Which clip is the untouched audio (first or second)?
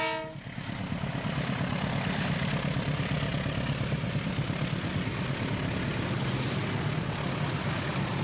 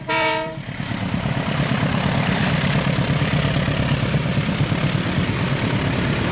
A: first